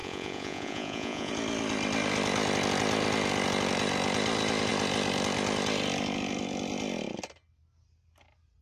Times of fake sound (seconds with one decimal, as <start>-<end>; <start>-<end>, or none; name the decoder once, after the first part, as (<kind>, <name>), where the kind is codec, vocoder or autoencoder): 0.0-1.3 (vocoder, Vocos)